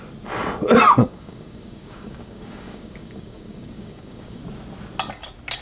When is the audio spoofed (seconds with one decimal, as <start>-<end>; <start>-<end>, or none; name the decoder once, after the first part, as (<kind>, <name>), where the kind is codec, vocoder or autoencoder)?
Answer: 1.0-4.4 (codec, DAC)